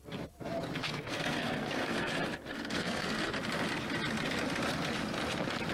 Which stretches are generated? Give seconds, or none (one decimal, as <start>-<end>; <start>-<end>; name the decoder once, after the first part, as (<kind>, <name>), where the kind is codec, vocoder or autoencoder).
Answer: 0.8-2.1 (codec, SNAC); 2.5-3.3